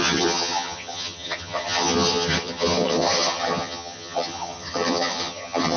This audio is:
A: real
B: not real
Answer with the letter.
B